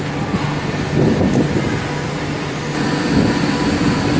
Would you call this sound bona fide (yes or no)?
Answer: yes